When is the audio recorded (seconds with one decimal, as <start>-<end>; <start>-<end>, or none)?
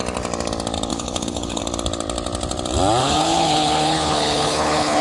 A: 0.0-0.9; 1.6-3.0